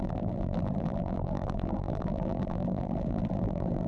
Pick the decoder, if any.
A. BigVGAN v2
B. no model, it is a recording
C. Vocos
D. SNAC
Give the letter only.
A